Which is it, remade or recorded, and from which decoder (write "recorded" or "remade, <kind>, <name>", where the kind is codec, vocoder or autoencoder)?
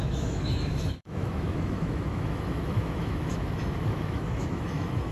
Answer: remade, autoencoder, DAC-VAE